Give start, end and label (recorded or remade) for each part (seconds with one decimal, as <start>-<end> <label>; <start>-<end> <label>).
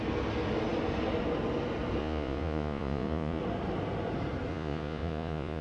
0.0-2.0 recorded; 2.0-3.4 remade; 3.4-4.5 recorded; 4.5-5.6 remade